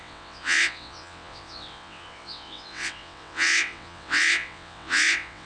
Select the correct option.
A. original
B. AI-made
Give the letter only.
B